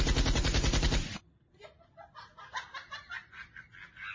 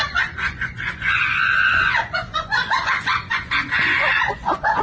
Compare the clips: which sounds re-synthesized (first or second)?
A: second